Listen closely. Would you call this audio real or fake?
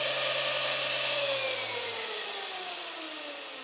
real